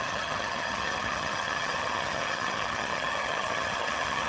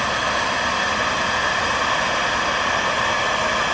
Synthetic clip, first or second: first